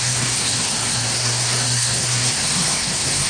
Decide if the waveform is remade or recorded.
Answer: remade